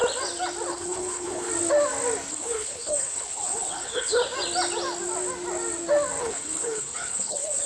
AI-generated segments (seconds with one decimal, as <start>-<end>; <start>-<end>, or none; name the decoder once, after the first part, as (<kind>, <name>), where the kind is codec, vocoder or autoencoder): 0.7-1.5 (codec, HILCodec); 2.3-4.2; 6.2-7.7